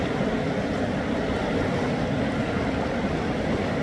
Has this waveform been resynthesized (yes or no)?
no